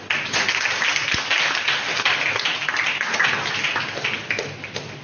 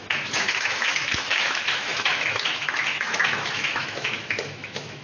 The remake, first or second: second